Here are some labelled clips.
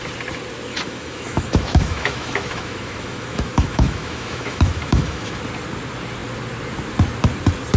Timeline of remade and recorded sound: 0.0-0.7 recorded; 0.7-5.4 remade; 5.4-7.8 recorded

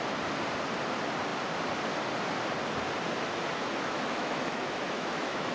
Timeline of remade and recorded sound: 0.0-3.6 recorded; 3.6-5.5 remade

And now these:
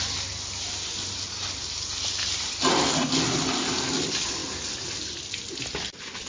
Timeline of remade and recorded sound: 0.0-6.3 recorded

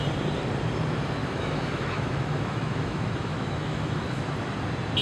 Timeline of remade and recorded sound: 0.0-1.2 recorded; 1.2-4.2 remade; 4.2-5.0 recorded

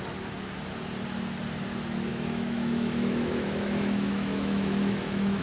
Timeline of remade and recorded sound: 0.0-2.1 recorded; 2.1-5.4 remade

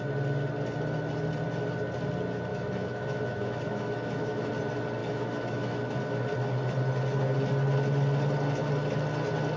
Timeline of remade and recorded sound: 0.0-2.5 recorded; 2.5-4.5 remade; 4.5-5.0 recorded; 5.0-6.0 remade; 6.0-9.6 recorded

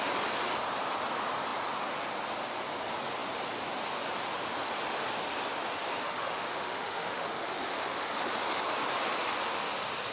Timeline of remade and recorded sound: 0.0-5.8 recorded; 5.8-8.3 remade; 8.3-10.1 recorded

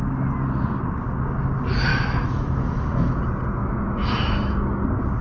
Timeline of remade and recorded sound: 0.0-1.9 recorded; 1.9-3.2 remade; 3.2-3.6 recorded; 3.6-4.8 remade; 4.8-5.2 recorded